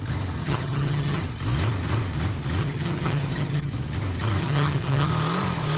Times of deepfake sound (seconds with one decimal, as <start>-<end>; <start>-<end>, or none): 0.4-1.2; 2.6-3.7; 4.4-5.1